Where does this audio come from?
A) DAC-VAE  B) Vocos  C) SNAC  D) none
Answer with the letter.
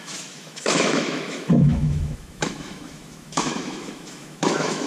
A